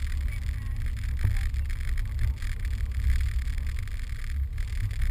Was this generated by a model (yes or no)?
no